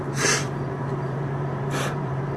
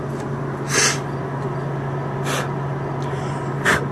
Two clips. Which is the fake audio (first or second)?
first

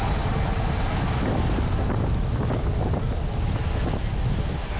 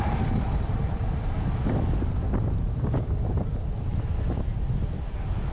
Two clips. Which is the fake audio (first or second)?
second